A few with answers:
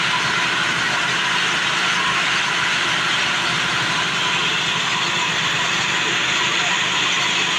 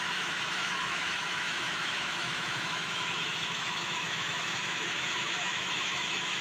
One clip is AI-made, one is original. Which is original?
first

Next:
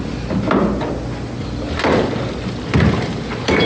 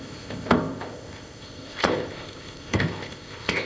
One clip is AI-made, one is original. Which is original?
first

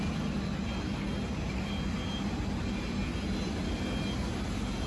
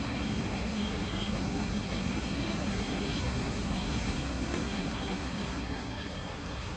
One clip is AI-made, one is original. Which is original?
first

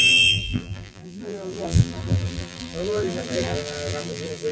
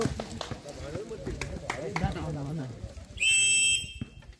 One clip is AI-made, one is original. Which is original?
second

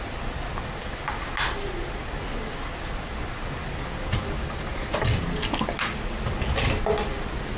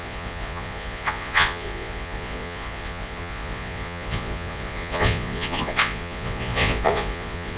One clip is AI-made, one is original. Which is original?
first